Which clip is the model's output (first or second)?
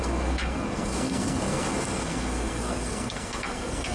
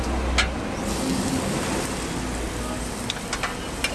first